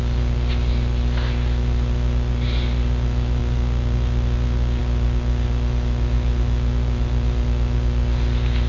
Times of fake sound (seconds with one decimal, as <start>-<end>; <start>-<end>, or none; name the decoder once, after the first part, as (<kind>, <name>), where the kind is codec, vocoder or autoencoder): none